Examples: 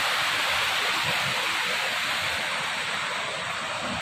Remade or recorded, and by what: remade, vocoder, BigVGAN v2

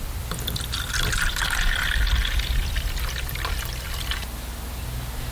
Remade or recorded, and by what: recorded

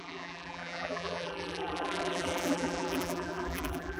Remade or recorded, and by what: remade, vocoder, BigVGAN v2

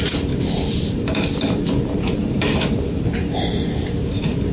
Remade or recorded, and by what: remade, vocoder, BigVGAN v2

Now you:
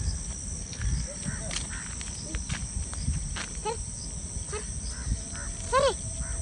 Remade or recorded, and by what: recorded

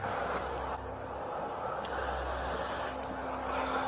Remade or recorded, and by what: recorded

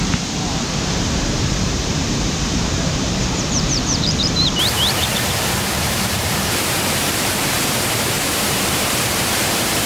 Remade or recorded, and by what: remade, vocoder, BigVGAN v2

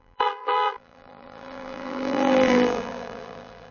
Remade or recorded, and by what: remade, vocoder, BigVGAN v2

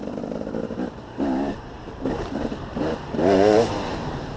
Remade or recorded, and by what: remade, vocoder, BigVGAN v2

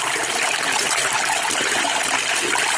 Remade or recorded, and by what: remade, vocoder, BigVGAN v2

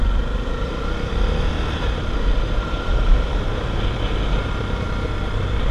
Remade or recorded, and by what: remade, vocoder, BigVGAN v2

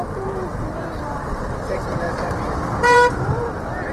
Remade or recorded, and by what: remade, vocoder, BigVGAN v2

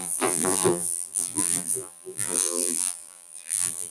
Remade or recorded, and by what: remade, vocoder, BigVGAN v2